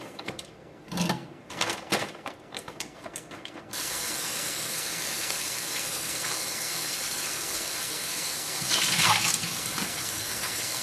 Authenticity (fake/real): fake